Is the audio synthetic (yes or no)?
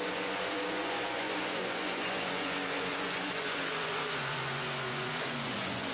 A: yes